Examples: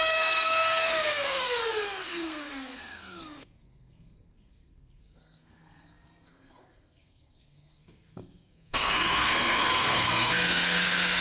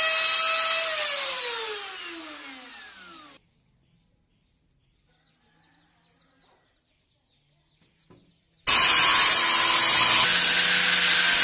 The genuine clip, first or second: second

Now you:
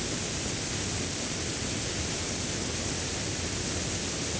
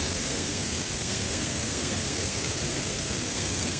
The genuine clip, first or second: first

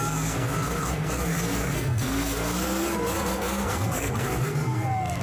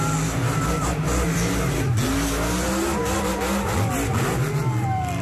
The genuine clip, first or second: second